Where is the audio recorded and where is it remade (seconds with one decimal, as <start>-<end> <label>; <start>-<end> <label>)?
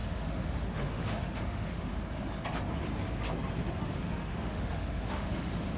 0.0-1.9 remade; 1.9-3.8 recorded; 3.8-5.8 remade